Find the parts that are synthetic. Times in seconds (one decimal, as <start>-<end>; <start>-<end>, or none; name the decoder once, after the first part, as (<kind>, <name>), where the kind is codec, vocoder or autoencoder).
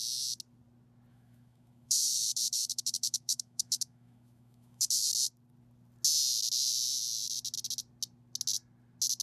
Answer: 1.1-5.1 (autoencoder, DAC-VAE)